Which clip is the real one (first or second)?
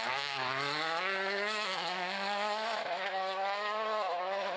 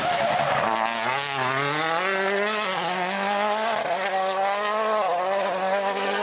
second